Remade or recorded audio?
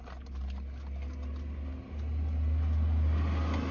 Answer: recorded